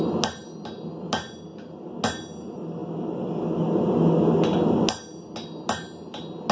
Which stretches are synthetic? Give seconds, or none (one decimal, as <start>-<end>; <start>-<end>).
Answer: none